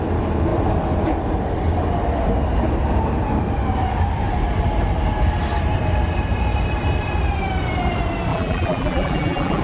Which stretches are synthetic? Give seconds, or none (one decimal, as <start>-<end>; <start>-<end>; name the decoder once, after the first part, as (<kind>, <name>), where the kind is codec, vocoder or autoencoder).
8.3-9.6 (vocoder, BigVGAN v2)